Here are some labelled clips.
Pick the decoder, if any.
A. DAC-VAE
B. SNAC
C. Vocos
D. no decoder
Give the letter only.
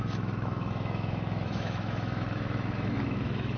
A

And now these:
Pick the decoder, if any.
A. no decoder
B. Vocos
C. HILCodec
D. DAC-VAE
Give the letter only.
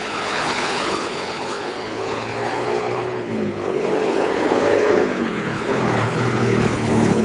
C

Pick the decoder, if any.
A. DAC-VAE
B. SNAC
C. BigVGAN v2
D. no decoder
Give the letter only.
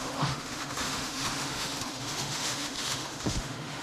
A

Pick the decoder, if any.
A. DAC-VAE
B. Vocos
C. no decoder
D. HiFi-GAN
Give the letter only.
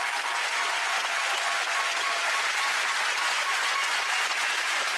B